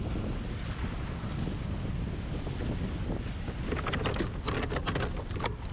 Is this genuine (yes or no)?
yes